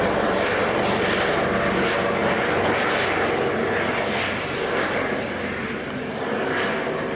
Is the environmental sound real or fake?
real